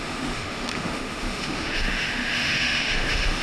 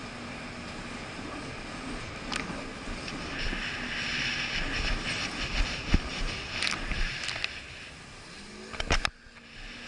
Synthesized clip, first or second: first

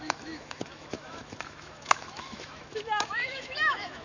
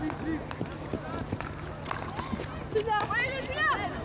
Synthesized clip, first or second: first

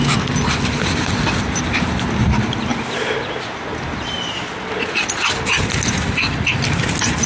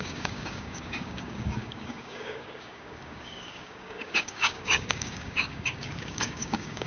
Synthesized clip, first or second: second